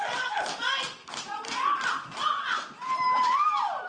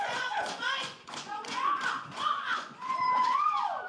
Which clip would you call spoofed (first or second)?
second